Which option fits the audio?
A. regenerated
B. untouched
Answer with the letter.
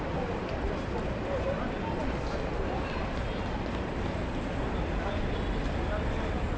B